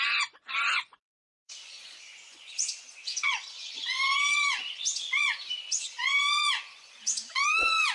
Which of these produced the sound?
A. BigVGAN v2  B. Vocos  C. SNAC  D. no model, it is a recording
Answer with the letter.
B